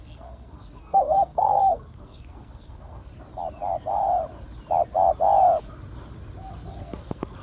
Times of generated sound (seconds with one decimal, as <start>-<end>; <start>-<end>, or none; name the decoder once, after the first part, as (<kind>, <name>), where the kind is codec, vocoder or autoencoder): 0.0-3.1 (codec, SNAC); 6.8-7.4